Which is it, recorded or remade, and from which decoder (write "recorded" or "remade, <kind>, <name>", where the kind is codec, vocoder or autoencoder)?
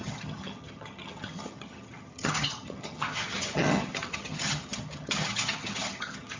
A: remade, vocoder, HiFi-GAN